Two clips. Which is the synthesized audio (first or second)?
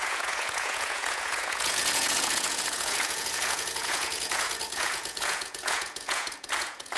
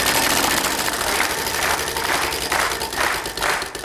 first